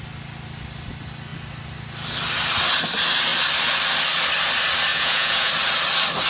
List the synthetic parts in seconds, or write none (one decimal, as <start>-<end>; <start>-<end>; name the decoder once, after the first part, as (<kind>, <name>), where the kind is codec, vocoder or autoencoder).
4.9-5.5 (vocoder, Vocos)